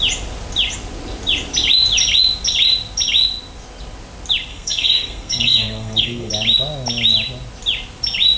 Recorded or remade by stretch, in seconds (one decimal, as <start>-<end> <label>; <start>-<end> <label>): 0.0-4.5 recorded; 4.5-6.3 remade; 6.3-8.4 recorded